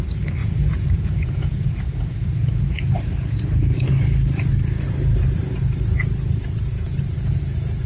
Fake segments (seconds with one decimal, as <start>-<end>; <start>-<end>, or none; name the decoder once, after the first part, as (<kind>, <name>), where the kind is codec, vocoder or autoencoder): 0.4-2.9 (vocoder, Vocos); 6.4-7.9